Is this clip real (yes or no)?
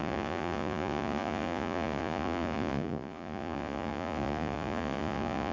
no